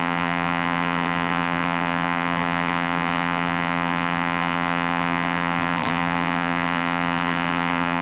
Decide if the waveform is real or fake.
fake